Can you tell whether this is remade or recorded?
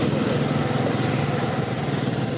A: recorded